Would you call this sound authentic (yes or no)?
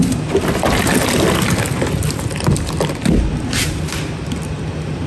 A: yes